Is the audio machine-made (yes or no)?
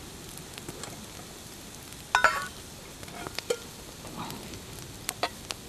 no